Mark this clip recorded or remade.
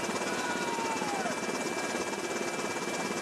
recorded